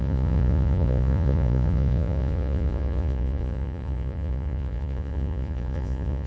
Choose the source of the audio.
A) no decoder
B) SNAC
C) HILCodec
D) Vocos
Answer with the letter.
D